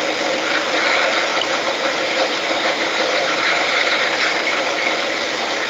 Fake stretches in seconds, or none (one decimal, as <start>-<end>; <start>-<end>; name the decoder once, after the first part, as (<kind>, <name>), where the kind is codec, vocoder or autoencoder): 1.3-4.7 (vocoder, BigVGAN v2)